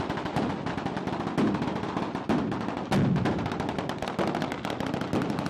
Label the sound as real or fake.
real